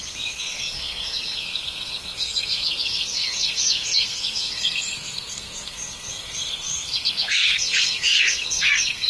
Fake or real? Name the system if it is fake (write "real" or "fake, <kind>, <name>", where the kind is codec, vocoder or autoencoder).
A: fake, codec, SNAC